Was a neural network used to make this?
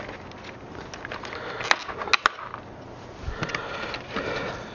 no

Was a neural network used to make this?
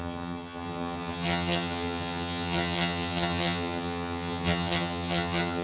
yes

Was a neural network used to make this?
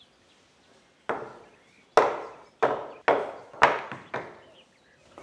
no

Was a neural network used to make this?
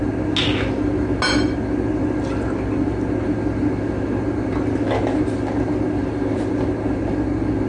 no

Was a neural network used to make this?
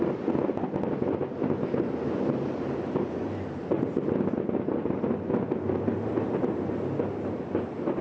no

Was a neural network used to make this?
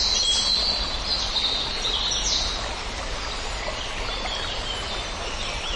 no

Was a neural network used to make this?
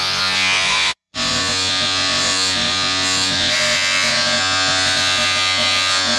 yes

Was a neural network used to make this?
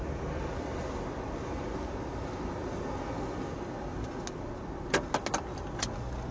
no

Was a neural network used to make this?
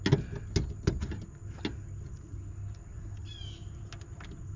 no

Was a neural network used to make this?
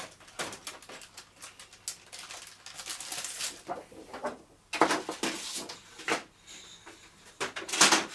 no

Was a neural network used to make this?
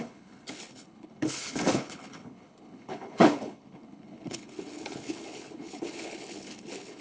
yes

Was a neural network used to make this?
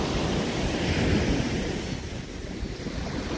no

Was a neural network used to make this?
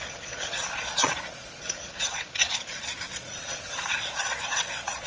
yes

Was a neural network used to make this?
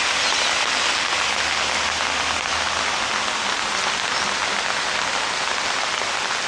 no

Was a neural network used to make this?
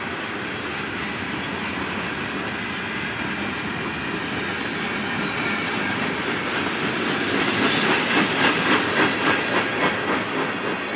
no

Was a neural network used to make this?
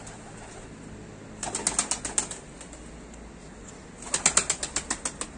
no